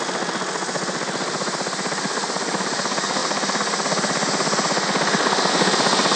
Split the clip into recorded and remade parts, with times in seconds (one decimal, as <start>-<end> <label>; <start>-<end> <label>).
0.0-6.2 recorded